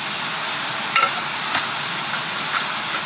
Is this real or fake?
real